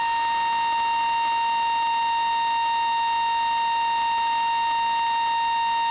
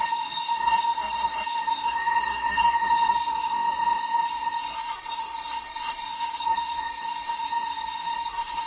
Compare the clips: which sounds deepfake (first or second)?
second